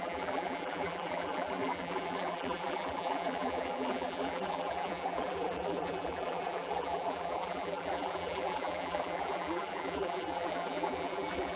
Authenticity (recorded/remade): remade